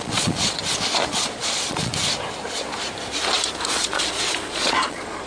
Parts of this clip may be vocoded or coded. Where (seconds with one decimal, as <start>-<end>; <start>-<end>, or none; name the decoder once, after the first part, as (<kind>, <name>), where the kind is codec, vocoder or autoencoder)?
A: 0.0-0.6 (vocoder, Vocos); 1.1-1.9; 3.7-5.3